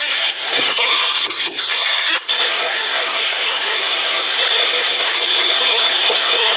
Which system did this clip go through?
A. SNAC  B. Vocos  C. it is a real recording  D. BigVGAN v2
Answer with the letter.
A